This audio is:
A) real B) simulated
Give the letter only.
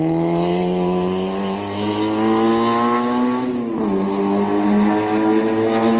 A